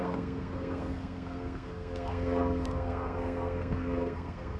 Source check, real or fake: fake